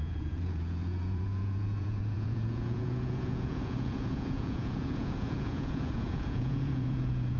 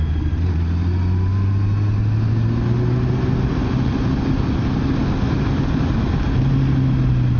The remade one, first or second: first